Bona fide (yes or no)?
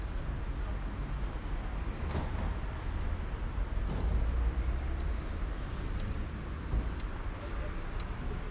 yes